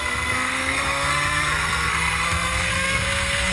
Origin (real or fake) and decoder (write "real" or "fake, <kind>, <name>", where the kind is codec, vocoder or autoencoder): fake, codec, SNAC